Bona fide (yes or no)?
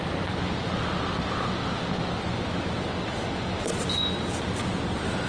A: yes